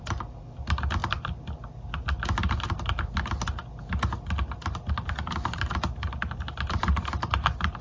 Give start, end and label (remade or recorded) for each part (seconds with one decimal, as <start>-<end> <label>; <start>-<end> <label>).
0.0-7.8 recorded